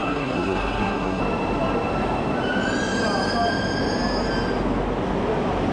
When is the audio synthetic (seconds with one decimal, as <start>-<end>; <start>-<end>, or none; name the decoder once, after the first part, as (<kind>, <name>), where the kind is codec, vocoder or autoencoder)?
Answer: 0.0-1.2 (codec, SNAC)